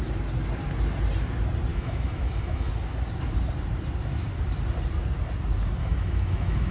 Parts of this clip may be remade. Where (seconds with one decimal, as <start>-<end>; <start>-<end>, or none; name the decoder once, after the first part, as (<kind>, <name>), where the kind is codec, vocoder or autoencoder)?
1.7-2.7 (autoencoder, DAC-VAE); 5.8-6.7